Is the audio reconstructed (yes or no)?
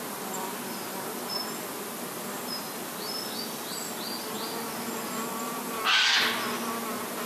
no